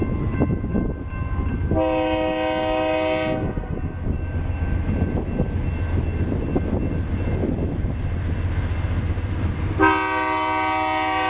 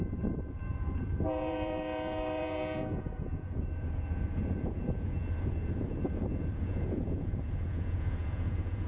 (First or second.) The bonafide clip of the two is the first